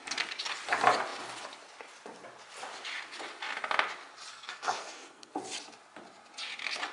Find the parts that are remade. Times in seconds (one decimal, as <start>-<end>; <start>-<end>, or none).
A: 4.3-5.4